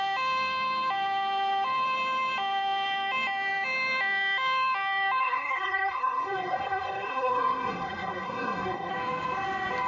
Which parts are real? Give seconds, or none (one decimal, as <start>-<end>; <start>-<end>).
0.0-5.2; 8.9-9.9